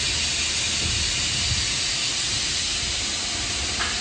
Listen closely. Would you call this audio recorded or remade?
recorded